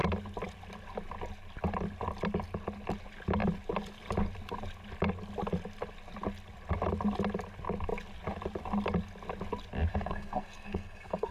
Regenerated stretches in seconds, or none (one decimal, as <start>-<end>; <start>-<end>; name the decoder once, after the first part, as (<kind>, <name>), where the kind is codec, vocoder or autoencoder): 9.9-11.3 (codec, SNAC)